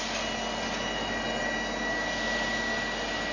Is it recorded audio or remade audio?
recorded